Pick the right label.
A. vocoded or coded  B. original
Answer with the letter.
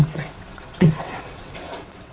A